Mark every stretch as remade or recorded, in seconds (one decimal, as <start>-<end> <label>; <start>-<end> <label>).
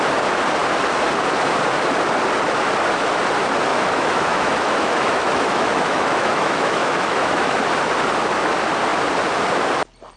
0.0-3.7 recorded; 3.7-7.6 remade; 7.6-10.2 recorded